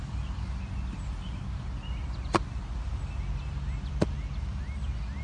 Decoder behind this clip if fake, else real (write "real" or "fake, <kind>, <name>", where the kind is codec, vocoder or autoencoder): real